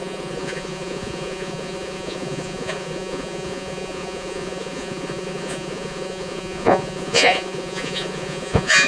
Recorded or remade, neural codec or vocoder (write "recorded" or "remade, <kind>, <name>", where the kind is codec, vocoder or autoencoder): remade, vocoder, Vocos